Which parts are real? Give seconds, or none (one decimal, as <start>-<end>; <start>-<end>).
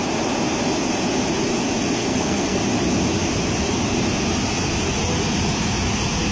0.0-2.0; 2.6-6.3